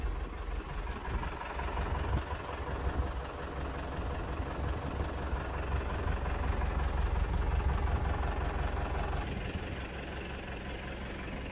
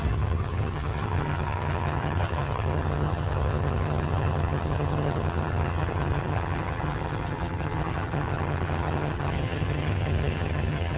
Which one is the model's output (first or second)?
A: second